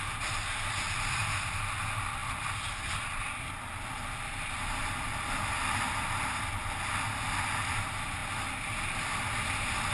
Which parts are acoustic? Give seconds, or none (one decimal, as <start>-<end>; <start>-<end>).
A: 0.0-9.9